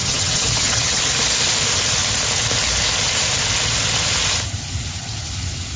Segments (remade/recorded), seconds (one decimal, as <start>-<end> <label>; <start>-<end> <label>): 0.0-1.0 remade; 1.0-5.8 recorded